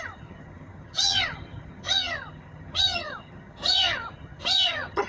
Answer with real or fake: fake